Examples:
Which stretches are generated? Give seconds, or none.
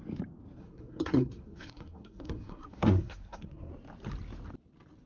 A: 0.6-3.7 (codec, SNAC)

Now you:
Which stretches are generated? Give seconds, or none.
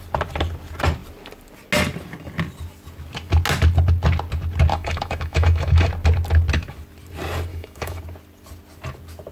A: 4.7-5.9 (autoencoder, DAC-VAE); 7.5-8.0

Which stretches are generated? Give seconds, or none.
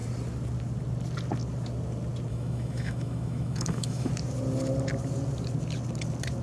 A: 2.3-4.1 (autoencoder, DAC-VAE)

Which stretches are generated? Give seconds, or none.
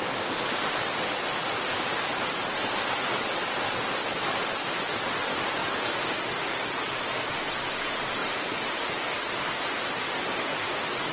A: 1.3-2.5 (vocoder, BigVGAN v2); 5.6-7.3; 8.2-9.4